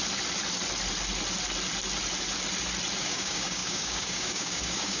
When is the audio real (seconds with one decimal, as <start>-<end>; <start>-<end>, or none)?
0.0-3.0